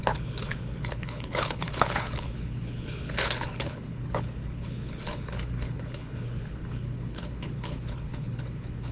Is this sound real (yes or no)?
no